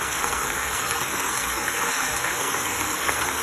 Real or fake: fake